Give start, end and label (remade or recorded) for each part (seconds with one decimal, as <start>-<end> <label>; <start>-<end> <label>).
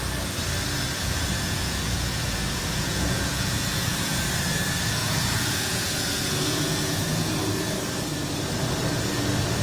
0.0-1.0 recorded; 1.0-4.2 remade; 4.2-5.0 recorded; 5.0-7.3 remade; 7.3-9.6 recorded